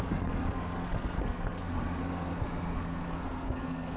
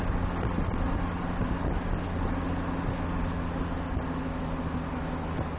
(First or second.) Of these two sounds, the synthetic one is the first